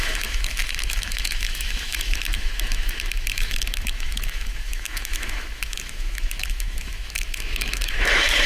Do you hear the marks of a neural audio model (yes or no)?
yes